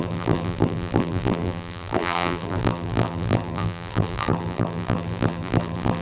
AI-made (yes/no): yes